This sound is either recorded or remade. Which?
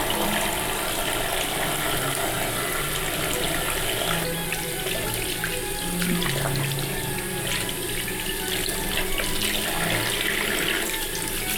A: recorded